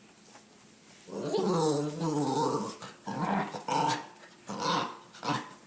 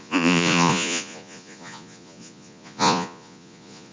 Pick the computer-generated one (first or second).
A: second